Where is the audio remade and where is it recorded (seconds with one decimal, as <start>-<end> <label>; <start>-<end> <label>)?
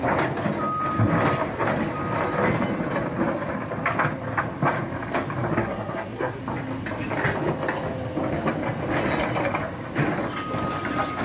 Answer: 0.0-5.5 recorded; 5.5-6.4 remade; 6.4-11.2 recorded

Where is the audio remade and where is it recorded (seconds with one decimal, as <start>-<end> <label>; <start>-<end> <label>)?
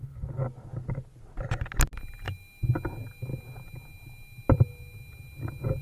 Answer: 0.0-5.8 recorded